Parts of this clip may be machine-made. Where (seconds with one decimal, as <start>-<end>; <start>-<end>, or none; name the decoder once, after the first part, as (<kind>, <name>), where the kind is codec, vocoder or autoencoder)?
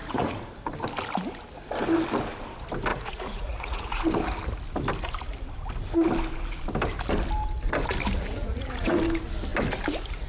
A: 0.0-0.7 (vocoder, Vocos); 2.9-4.0; 8.2-9.0